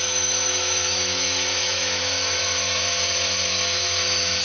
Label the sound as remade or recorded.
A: remade